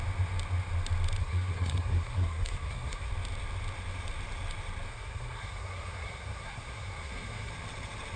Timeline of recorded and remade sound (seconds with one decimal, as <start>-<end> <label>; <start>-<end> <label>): 0.0-1.2 recorded; 1.2-3.1 remade; 3.1-4.9 recorded; 4.9-7.5 remade; 7.5-8.2 recorded